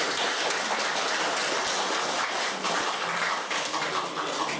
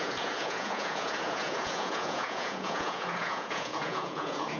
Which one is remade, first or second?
second